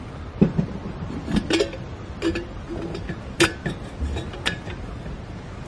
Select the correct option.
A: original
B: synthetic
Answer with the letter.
B